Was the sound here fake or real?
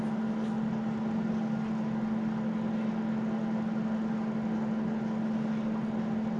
real